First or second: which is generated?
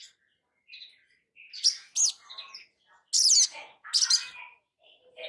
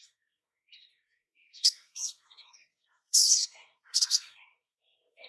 second